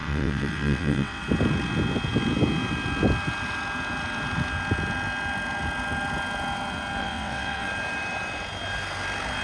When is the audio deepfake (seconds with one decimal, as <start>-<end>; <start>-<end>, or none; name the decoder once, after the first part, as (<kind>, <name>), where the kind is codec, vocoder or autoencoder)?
0.0-1.2 (vocoder, WaveNeXt); 7.0-7.7